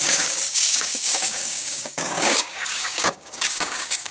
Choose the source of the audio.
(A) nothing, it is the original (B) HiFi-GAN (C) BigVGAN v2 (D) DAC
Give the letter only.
D